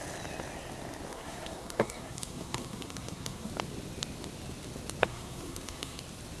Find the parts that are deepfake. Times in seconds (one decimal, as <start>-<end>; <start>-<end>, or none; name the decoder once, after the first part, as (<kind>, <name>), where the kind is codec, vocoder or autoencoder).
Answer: 1.1-3.5 (codec, SNAC); 5.0-6.0